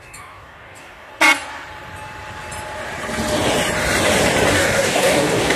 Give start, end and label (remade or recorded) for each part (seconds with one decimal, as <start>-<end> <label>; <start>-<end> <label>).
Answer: 0.0-1.1 remade; 1.1-4.5 recorded; 4.5-5.6 remade